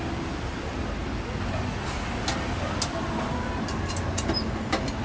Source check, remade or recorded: recorded